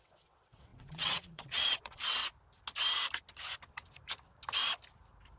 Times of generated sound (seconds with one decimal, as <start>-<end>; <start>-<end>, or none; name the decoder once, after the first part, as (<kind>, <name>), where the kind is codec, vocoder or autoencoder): 0.0-2.2 (vocoder, WaveNeXt)